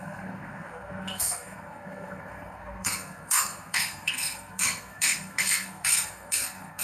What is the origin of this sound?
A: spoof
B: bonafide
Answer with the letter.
A